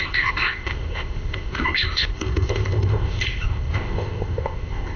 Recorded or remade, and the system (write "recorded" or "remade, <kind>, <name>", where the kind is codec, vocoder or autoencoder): remade, codec, ZipCodec